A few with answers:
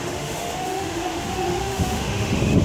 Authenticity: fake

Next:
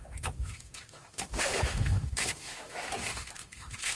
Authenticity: fake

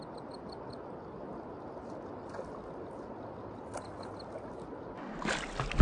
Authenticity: real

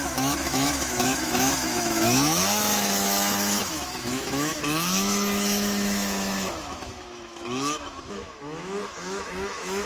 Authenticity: fake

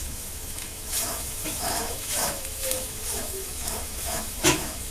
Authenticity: fake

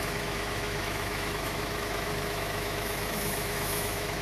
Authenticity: fake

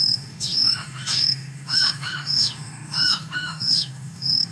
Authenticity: fake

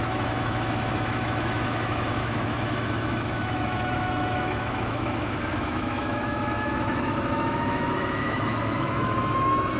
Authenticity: fake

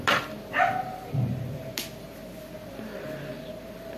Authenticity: real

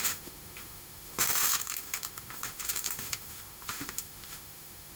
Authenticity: fake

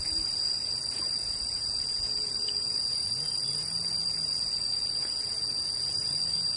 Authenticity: real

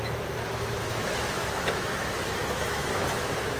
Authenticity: fake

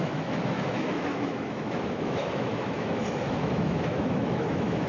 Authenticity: fake